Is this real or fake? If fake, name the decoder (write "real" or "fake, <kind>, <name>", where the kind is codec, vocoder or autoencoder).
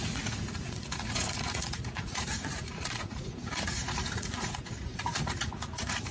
fake, vocoder, Vocos